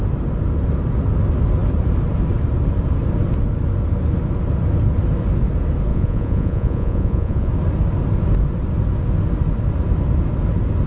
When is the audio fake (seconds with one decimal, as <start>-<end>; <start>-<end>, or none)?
5.9-7.5